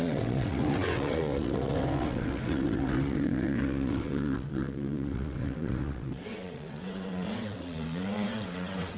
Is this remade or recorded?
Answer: remade